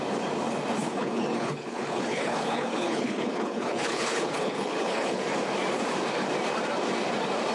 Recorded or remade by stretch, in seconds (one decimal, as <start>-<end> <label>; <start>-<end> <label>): 0.0-0.8 recorded; 0.8-5.2 remade; 5.2-7.5 recorded